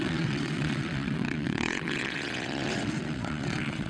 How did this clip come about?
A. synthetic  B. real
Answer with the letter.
A